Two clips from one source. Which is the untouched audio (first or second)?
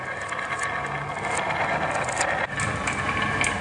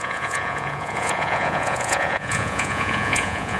first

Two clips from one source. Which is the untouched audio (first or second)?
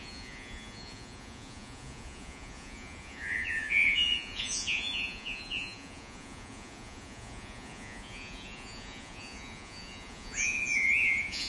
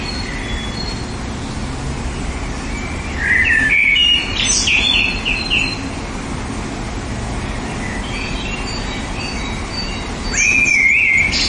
second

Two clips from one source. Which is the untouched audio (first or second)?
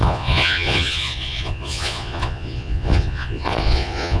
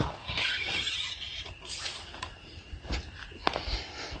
second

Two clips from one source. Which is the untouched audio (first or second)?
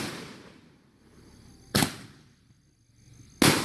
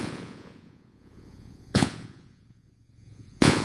first